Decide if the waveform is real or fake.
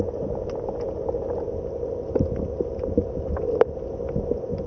real